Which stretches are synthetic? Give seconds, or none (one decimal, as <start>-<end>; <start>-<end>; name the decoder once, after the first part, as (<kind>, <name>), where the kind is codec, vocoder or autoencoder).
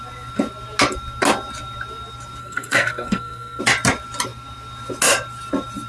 2.4-3.6 (codec, SNAC)